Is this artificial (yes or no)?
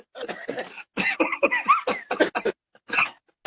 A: no